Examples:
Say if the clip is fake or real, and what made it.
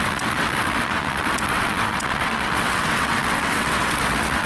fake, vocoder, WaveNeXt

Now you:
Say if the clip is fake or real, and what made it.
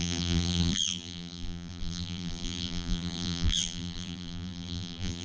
fake, vocoder, BigVGAN v2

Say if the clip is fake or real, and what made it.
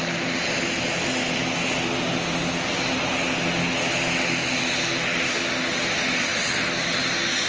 real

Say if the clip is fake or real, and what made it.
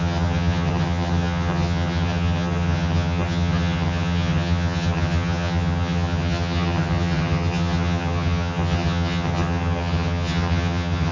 fake, vocoder, HiFi-GAN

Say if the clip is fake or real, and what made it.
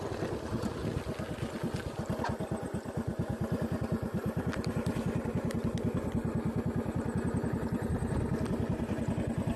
real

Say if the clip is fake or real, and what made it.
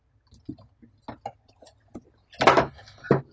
real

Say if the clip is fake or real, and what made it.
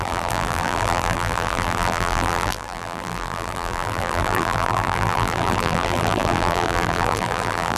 fake, vocoder, BigVGAN v2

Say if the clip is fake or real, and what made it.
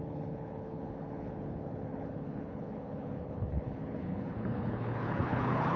fake, codec, HILCodec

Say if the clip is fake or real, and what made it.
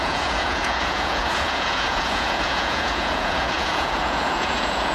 fake, vocoder, Vocos